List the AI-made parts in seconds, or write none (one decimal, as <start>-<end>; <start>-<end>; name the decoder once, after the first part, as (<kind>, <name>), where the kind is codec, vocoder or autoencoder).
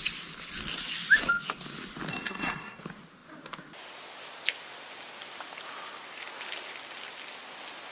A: 2.1-2.8 (codec, SNAC)